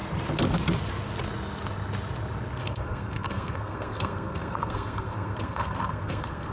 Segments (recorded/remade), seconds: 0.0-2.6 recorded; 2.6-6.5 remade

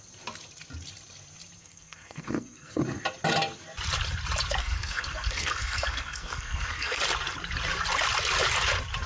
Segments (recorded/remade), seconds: 0.0-1.6 recorded; 1.6-2.8 remade; 2.8-4.6 recorded; 4.6-7.0 remade; 7.0-9.1 recorded

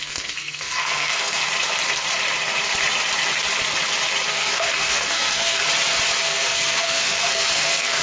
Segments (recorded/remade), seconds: 0.0-1.4 remade; 1.4-4.3 recorded; 4.3-5.6 remade; 5.6-6.2 recorded; 6.2-8.0 remade

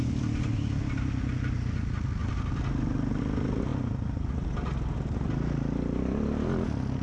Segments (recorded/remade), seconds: 0.0-7.0 recorded

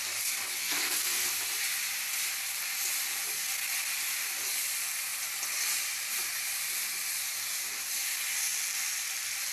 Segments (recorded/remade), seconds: 0.0-0.6 recorded; 0.6-1.3 remade; 1.3-9.5 recorded

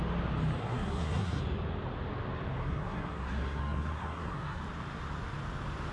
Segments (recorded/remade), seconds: 0.0-0.6 recorded; 0.6-1.4 remade; 1.4-2.6 recorded; 2.6-4.6 remade; 4.6-5.9 recorded